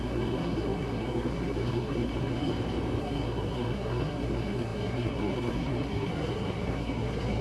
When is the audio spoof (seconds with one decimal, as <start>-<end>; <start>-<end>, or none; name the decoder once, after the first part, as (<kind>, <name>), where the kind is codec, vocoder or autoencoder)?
0.0-2.5 (codec, SNAC); 3.0-7.4

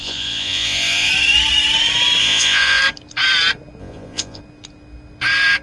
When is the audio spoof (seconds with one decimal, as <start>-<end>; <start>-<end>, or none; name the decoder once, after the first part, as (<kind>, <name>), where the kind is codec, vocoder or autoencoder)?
0.0-1.1 (vocoder, Vocos); 2.2-2.8; 3.8-4.4